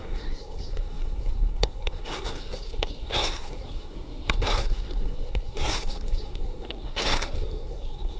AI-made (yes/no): yes